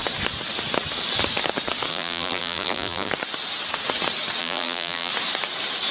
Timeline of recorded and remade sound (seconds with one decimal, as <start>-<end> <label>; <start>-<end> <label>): 0.0-1.9 recorded; 1.9-3.1 remade; 3.1-4.4 recorded; 4.4-5.1 remade; 5.1-5.9 recorded